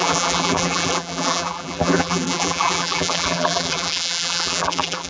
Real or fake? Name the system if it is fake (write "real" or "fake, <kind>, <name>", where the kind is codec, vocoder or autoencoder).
fake, vocoder, BigVGAN v2